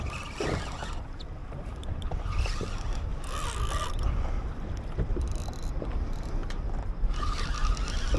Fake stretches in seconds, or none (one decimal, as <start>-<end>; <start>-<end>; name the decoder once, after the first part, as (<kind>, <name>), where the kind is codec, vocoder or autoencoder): 1.4-2.5 (vocoder, BigVGAN v2); 6.4-7.0